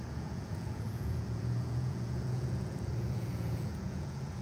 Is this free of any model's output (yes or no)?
no